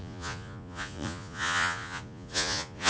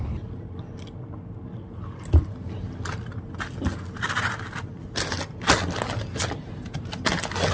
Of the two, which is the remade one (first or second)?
first